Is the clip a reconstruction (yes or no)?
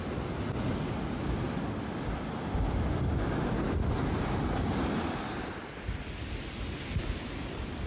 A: no